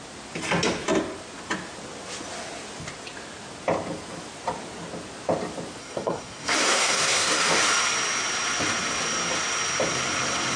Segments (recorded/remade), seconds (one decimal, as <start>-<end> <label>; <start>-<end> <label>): 0.0-5.8 recorded; 5.8-7.4 remade; 7.4-10.6 recorded